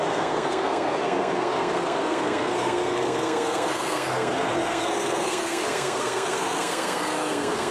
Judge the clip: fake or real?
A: fake